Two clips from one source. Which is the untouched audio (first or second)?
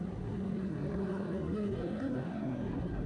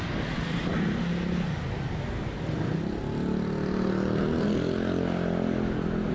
second